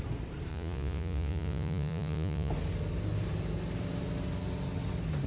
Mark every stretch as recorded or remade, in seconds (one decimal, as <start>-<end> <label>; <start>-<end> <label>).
0.0-0.5 recorded; 0.5-2.5 remade; 2.5-5.3 recorded